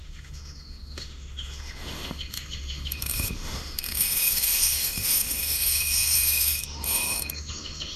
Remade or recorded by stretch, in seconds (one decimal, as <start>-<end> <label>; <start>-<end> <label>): 0.0-8.0 remade